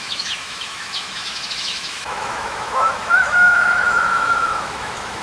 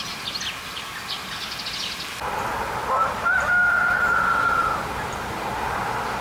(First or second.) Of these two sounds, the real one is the second